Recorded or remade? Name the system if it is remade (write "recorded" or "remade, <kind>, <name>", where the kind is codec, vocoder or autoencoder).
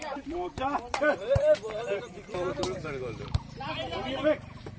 remade, vocoder, BigVGAN v2